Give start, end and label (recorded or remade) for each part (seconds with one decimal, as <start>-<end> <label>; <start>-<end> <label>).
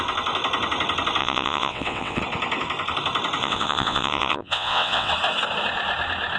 0.0-1.2 recorded; 1.2-2.2 remade; 2.2-3.4 recorded; 3.4-5.1 remade; 5.1-6.4 recorded